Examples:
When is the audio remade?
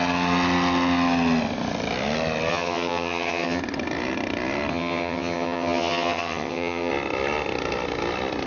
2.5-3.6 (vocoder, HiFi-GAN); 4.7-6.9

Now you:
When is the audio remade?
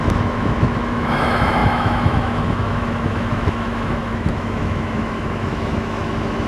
0.0-6.5 (autoencoder, DAC-VAE)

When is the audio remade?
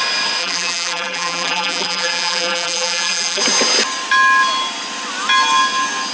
0.4-3.4 (vocoder, BigVGAN v2)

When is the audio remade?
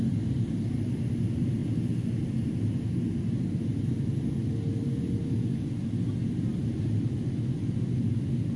none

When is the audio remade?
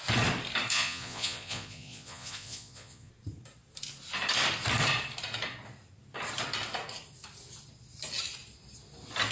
0.7-3.1 (vocoder, Vocos)